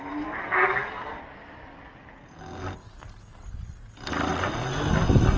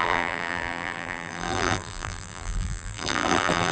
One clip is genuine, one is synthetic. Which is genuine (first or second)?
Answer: first